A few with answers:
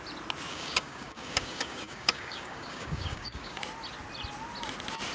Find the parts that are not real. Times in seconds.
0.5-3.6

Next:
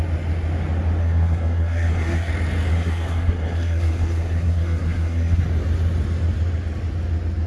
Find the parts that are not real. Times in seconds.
1.0-2.3; 2.7-5.4

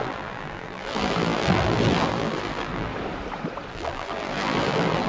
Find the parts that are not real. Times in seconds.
0.0-2.9; 3.7-5.1

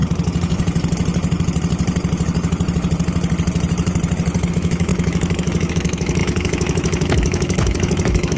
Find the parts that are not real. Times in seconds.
4.5-8.4